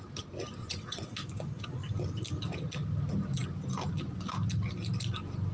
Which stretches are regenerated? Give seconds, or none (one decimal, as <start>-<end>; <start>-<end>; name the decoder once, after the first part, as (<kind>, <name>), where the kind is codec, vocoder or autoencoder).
0.6-1.1 (vocoder, WaveNeXt)